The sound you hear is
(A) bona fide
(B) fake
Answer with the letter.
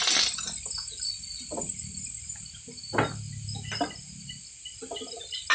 A